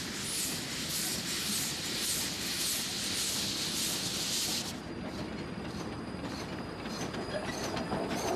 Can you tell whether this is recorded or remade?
recorded